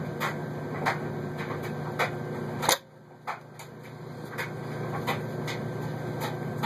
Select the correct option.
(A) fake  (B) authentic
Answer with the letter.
B